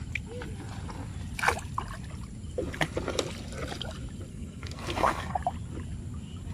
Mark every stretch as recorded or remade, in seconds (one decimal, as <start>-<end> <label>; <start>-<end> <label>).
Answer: 0.0-4.3 recorded; 4.3-5.4 remade; 5.4-6.5 recorded